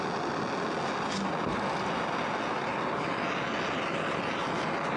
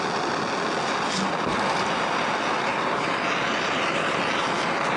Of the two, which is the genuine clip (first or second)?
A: first